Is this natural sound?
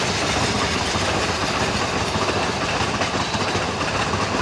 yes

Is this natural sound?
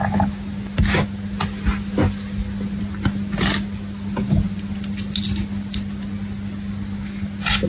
yes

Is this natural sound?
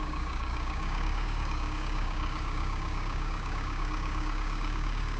no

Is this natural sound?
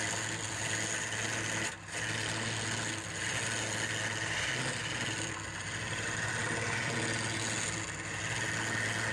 yes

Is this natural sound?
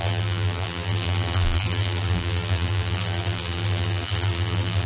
no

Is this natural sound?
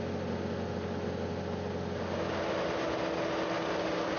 yes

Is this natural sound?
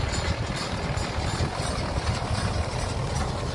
yes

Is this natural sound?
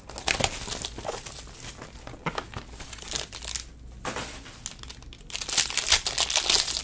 yes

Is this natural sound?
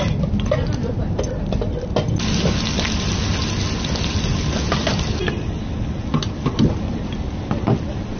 yes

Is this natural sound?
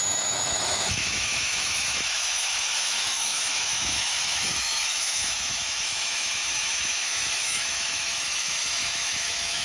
no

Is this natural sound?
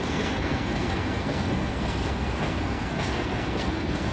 no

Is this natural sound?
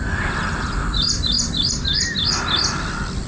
yes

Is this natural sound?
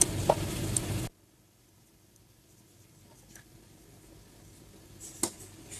yes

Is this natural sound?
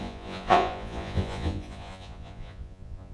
no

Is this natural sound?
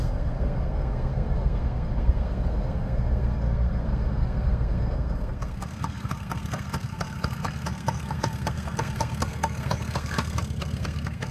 no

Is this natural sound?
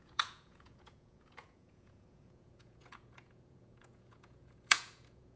no